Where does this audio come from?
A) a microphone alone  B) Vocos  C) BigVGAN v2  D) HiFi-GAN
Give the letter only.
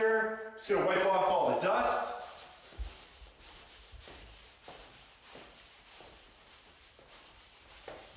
C